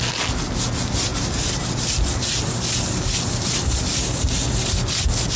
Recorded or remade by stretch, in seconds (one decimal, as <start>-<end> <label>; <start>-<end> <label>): 0.0-5.4 recorded